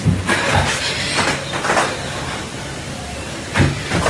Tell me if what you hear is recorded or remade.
recorded